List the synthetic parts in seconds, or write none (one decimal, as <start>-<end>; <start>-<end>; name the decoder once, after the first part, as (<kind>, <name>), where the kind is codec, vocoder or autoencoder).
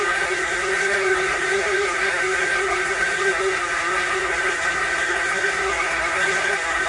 0.0-6.9 (codec, SNAC)